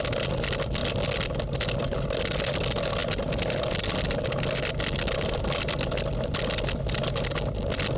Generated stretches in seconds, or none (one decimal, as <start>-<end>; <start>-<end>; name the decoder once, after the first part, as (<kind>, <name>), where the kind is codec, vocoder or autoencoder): none